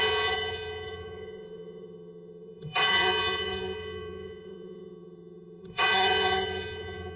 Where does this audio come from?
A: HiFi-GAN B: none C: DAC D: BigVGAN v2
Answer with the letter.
A